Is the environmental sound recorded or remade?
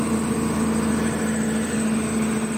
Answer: recorded